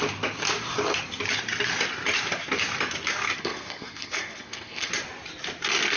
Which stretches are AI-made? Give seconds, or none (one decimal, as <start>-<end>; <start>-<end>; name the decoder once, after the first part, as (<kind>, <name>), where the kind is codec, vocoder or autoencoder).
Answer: 3.4-4.9 (codec, SNAC)